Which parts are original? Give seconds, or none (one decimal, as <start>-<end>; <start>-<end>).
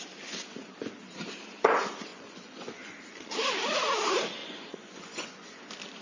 0.0-2.1; 3.0-4.4; 5.6-6.0